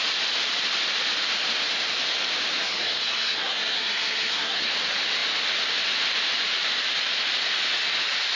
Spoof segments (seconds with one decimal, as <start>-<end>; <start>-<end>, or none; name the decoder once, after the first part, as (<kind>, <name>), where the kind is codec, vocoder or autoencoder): 2.6-4.7 (codec, SNAC)